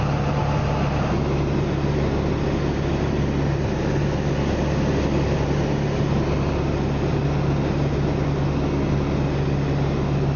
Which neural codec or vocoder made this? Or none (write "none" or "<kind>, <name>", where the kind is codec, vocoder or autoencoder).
none